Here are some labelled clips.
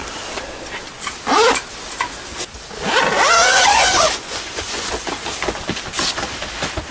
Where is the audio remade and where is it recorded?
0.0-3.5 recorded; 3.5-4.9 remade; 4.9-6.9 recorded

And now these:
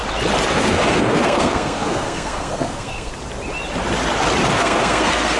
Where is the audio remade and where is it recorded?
0.0-0.5 recorded; 0.5-3.1 remade; 3.1-4.5 recorded; 4.5-5.4 remade

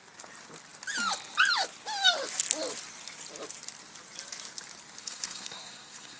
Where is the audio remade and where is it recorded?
0.0-5.0 recorded; 5.0-6.2 remade

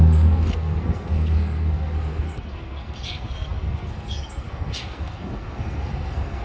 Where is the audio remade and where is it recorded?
0.0-6.4 remade

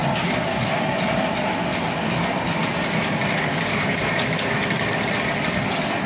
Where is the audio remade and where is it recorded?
0.0-3.5 recorded; 3.5-4.0 remade; 4.0-6.1 recorded

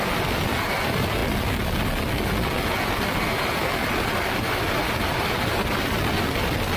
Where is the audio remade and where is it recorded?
0.0-6.8 recorded

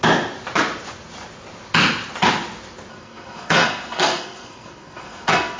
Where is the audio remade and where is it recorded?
0.0-2.9 recorded; 2.9-5.6 remade